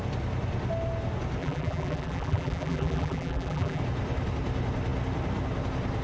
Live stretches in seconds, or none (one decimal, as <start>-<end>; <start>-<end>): 0.0-1.4; 3.8-6.0